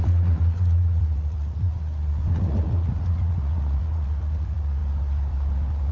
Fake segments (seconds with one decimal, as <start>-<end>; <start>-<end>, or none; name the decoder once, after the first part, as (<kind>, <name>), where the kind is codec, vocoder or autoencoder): 0.0-1.7 (vocoder, Vocos); 2.3-4.8